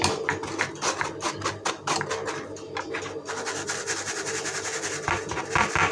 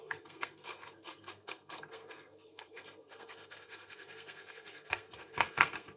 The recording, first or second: first